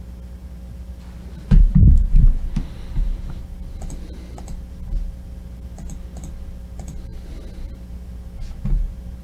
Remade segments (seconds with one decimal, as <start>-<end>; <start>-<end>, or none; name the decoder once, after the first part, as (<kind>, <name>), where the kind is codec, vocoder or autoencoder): none